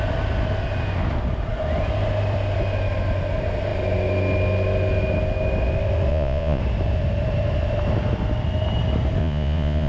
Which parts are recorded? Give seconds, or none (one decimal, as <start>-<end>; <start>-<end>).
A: 0.0-6.1; 6.6-9.2